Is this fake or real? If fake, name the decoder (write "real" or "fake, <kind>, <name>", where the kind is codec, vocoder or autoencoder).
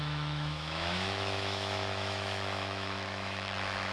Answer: fake, autoencoder, DAC-VAE